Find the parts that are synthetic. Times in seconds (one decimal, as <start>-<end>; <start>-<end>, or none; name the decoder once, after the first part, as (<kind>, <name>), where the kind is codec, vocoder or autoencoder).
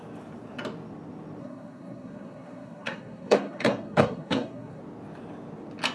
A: 1.4-4.8 (codec, SNAC)